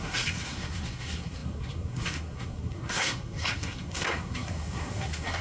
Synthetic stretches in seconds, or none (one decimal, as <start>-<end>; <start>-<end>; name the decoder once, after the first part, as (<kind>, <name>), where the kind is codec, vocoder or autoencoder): 0.0-5.4 (codec, SNAC)